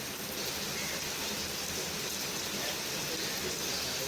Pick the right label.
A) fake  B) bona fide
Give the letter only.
B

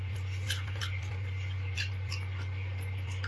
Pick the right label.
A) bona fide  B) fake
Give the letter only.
A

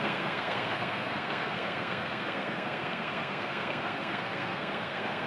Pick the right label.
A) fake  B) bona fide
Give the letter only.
A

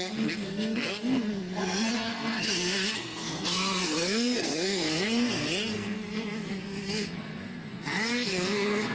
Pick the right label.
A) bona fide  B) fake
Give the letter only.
B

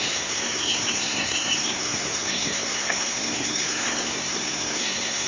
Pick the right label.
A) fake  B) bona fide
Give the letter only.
A